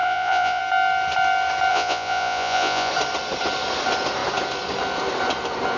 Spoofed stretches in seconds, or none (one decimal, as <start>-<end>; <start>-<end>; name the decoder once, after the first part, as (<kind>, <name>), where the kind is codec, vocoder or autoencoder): 0.0-0.6 (vocoder, Vocos); 1.7-2.9